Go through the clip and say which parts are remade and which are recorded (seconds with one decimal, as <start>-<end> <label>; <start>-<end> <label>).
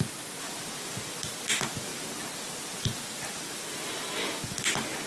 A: 0.0-5.1 recorded